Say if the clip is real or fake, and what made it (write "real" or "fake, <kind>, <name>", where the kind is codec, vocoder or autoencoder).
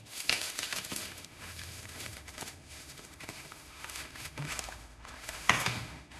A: fake, autoencoder, DAC-VAE